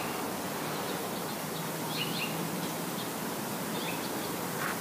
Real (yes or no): yes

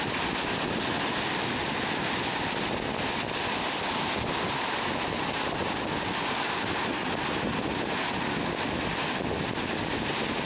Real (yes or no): yes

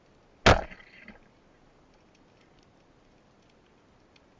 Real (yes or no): yes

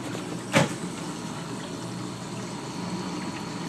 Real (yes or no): yes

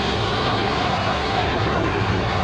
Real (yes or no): no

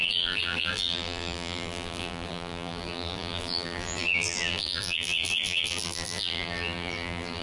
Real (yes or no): no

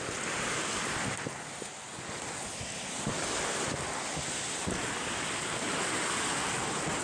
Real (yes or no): yes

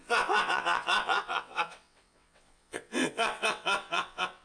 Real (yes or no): no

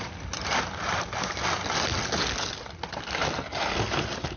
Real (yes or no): yes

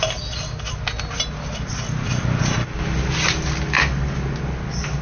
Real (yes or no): yes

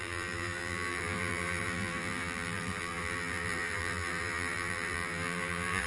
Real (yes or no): no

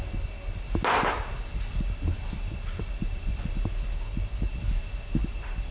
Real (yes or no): yes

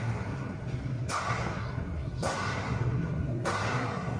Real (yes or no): no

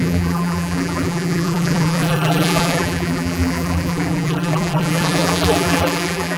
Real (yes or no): no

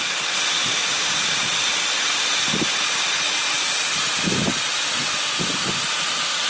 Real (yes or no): yes